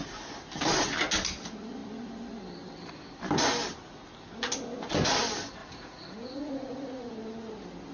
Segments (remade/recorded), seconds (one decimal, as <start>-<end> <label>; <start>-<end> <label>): 0.0-5.6 recorded; 5.6-7.1 remade; 7.1-7.9 recorded